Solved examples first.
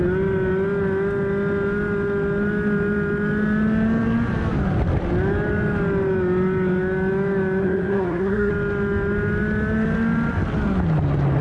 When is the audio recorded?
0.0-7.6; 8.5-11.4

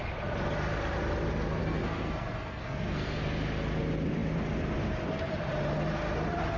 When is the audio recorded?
0.0-1.6; 3.2-6.6

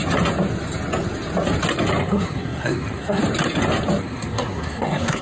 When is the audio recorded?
0.0-2.0; 3.2-4.0

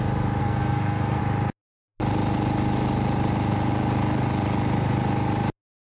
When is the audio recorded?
0.0-0.4; 1.2-5.8

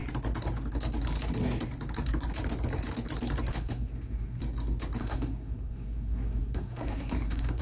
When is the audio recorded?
0.0-3.5; 4.4-5.0